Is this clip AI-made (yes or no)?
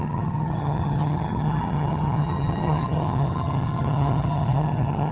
yes